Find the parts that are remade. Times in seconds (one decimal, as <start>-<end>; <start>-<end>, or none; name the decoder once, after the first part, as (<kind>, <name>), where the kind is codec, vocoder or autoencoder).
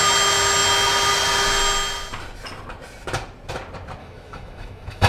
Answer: 4.0-5.1 (autoencoder, DAC-VAE)